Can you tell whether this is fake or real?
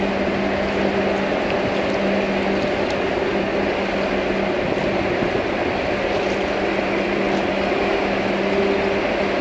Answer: real